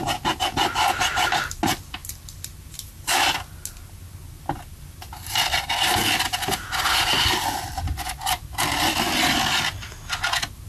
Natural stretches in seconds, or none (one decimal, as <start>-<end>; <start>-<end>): 0.0-10.7